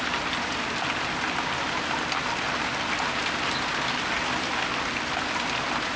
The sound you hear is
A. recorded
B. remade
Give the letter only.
A